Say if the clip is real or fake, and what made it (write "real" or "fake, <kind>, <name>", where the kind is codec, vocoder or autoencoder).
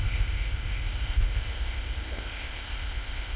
fake, codec, ZipCodec